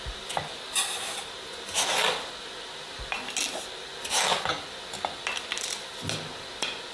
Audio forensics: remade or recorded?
recorded